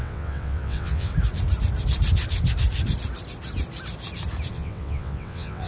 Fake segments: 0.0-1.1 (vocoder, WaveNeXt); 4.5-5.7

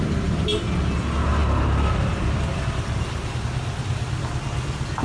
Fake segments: 1.4-3.4 (vocoder, BigVGAN v2)

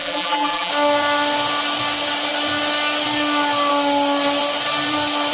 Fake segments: 0.0-0.7 (vocoder, BigVGAN v2)

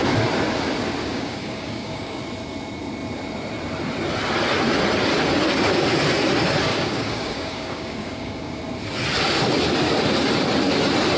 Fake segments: 1.0-2.2 (codec, DAC); 6.7-8.6

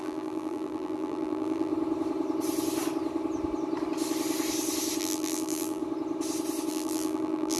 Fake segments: 0.0-1.7 (vocoder, BigVGAN v2); 5.0-5.8; 6.7-7.6

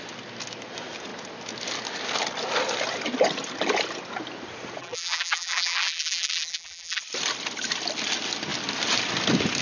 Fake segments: 4.8-7.0 (vocoder, BigVGAN v2)

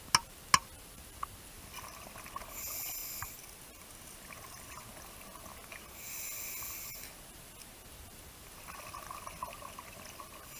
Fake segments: none